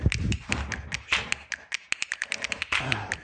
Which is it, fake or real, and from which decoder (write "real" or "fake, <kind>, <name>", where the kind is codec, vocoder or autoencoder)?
real